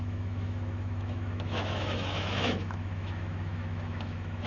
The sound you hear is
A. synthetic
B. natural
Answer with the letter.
A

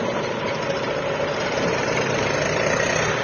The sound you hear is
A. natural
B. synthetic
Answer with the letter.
A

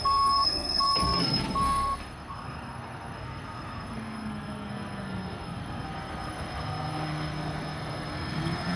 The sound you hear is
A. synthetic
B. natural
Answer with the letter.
A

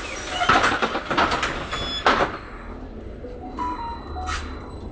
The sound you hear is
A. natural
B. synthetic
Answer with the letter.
A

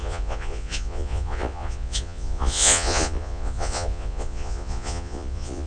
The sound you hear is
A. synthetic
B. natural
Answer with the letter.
A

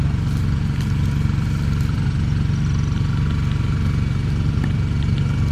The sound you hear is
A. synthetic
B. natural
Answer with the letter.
B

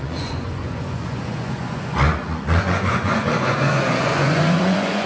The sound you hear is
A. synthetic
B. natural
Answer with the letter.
A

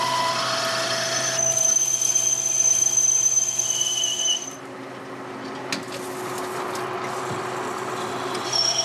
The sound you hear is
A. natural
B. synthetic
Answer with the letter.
A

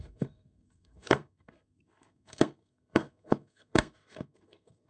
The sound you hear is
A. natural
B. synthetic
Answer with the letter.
B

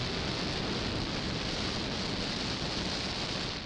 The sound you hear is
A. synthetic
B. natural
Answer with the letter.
B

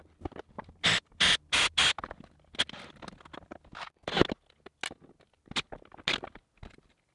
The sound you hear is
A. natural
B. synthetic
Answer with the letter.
A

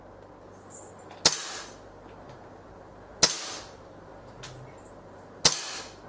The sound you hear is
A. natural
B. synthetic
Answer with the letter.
A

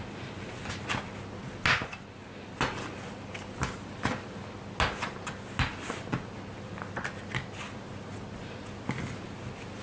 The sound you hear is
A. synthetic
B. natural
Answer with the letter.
B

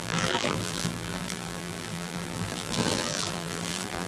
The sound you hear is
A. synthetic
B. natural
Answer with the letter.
A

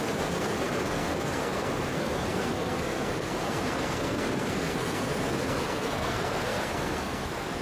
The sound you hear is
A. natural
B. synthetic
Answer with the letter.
B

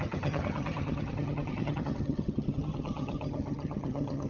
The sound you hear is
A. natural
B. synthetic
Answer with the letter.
B